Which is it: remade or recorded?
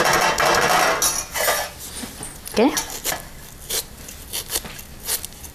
recorded